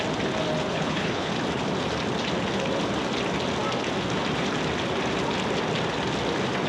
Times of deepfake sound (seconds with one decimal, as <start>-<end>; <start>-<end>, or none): 0.7-1.3